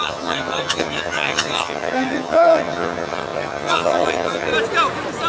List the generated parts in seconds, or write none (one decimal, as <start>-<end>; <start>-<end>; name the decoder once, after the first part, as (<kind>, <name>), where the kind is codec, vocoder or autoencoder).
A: 0.0-4.5 (vocoder, HiFi-GAN)